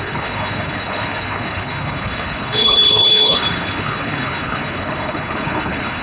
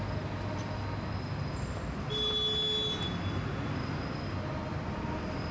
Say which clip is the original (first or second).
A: second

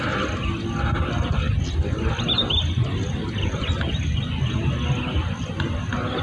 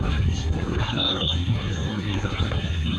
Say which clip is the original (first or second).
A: first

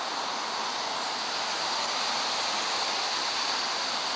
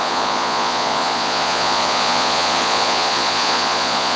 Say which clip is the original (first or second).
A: first